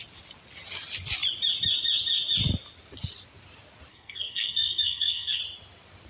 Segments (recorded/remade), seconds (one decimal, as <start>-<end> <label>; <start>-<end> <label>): 0.0-3.9 recorded; 3.9-5.4 remade; 5.4-6.1 recorded